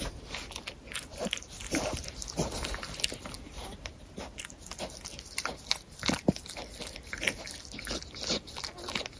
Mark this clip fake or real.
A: real